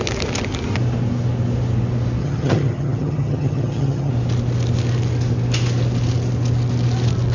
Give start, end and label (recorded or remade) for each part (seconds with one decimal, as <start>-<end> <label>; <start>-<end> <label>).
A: 0.0-2.2 recorded; 2.2-4.1 remade; 4.1-7.3 recorded